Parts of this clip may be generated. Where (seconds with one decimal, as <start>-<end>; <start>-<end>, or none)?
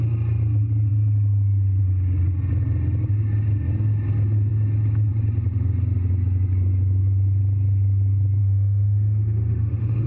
8.4-10.1